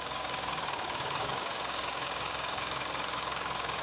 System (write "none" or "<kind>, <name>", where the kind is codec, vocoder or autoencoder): codec, DAC